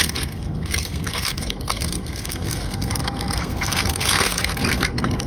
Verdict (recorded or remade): remade